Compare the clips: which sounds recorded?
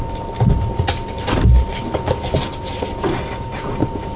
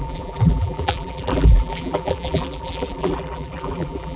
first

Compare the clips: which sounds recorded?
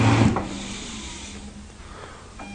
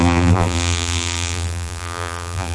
first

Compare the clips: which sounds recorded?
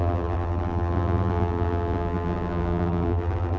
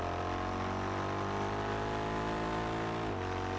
second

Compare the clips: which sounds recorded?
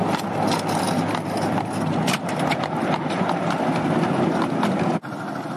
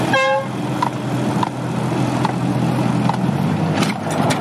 second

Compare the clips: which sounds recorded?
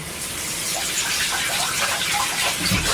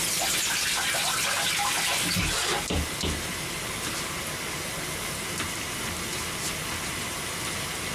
second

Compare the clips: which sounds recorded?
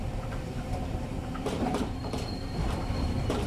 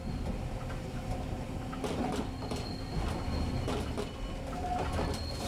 second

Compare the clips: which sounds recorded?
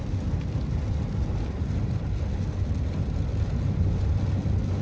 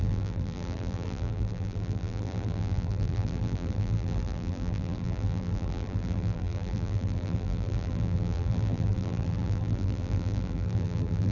first